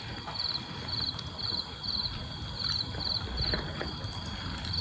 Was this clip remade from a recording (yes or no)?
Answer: no